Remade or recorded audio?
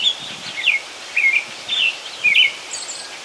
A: recorded